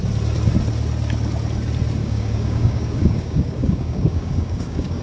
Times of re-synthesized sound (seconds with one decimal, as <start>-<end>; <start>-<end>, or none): 2.0-5.0